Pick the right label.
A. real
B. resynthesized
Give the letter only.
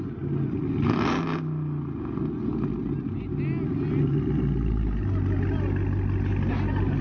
A